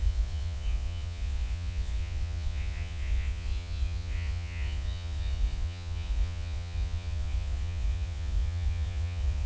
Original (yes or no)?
no